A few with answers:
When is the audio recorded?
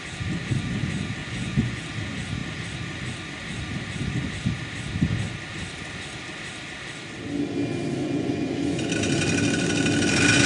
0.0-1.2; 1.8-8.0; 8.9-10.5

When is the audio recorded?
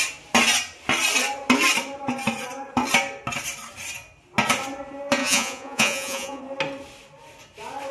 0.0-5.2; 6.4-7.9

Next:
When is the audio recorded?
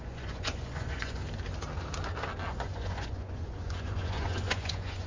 1.2-2.5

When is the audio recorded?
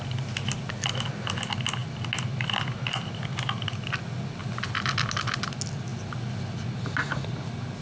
0.0-7.8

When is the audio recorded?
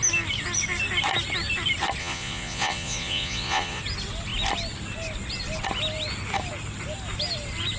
0.0-2.0; 3.8-7.8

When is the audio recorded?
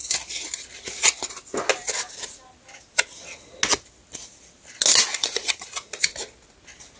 0.0-5.1; 6.0-7.0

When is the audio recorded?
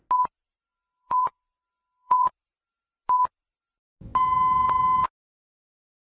0.0-0.7; 2.3-6.0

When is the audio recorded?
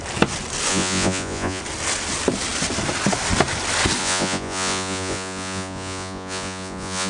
0.0-0.7; 1.6-4.0